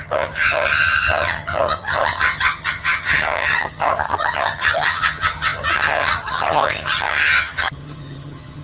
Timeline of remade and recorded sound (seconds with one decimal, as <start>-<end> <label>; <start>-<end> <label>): 0.0-8.6 remade